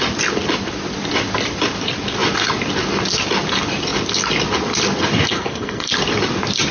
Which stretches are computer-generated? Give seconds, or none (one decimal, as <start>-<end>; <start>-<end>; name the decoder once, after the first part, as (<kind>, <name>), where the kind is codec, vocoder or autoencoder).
5.3-5.9 (codec, SNAC)